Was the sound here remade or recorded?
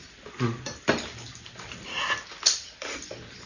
recorded